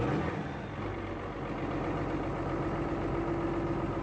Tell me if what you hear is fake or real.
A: real